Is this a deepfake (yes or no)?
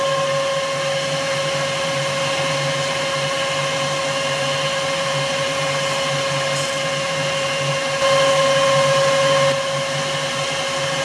no